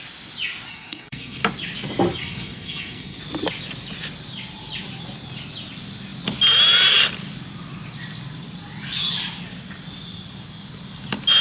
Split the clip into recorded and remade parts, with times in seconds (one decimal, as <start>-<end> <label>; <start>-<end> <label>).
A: 0.0-0.7 recorded; 0.7-1.4 remade; 1.4-2.2 recorded; 2.2-3.2 remade; 3.2-11.4 recorded